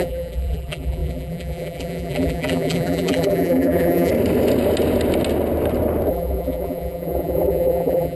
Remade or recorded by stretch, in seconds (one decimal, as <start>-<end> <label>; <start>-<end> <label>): 0.0-4.1 remade; 4.1-6.1 recorded; 6.1-8.2 remade